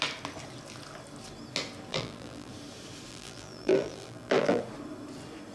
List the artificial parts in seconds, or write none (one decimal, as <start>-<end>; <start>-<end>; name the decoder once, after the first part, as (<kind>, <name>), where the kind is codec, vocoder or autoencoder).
1.9-2.5 (vocoder, BigVGAN v2); 3.1-4.6